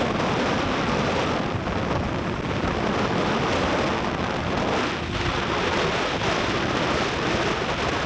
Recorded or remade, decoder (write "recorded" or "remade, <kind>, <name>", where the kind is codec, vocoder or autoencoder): recorded